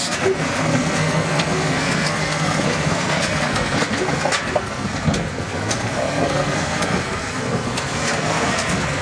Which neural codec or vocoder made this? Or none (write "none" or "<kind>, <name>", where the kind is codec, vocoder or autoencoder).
codec, SNAC